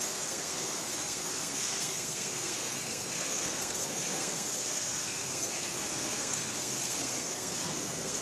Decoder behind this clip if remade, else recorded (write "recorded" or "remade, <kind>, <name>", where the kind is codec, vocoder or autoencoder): remade, codec, SNAC